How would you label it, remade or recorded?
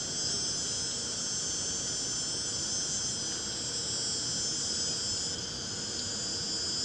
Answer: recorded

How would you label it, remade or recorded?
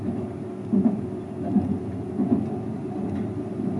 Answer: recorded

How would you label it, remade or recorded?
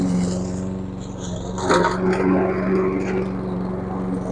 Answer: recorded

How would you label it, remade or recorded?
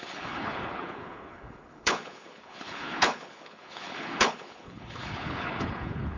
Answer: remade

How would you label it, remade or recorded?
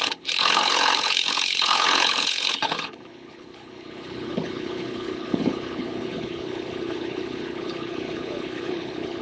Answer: remade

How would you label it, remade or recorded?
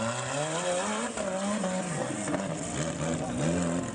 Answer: recorded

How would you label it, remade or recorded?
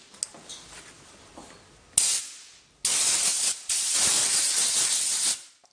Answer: recorded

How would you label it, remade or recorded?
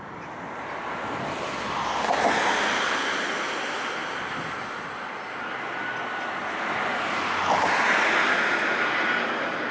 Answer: recorded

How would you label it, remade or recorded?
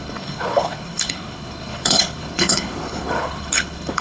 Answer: remade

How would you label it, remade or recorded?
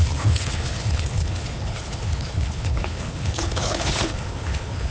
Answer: remade